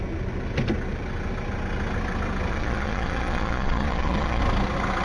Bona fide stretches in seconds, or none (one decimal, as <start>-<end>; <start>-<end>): 0.0-2.5; 4.4-5.0